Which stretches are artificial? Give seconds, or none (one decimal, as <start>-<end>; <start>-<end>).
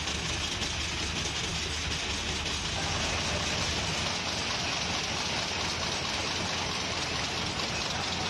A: none